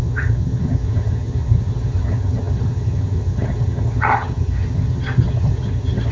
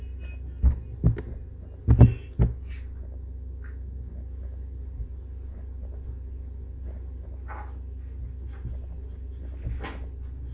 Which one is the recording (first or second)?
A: second